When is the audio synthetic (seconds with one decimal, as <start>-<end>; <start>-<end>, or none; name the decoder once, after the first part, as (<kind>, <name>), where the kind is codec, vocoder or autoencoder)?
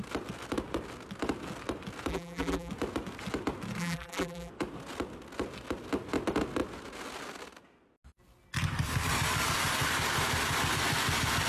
2.1-2.7 (vocoder, BigVGAN v2); 3.8-4.5